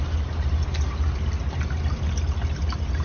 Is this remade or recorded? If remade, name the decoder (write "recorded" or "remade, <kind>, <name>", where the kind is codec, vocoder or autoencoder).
recorded